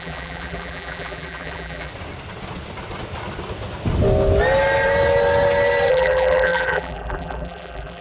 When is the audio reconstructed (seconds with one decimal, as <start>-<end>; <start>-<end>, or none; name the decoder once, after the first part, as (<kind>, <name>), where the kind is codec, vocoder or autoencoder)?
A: 0.0-1.9 (vocoder, BigVGAN v2); 5.9-8.0